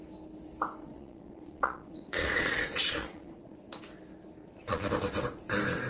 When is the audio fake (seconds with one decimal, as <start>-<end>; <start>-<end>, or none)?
0.8-3.8; 4.4-4.9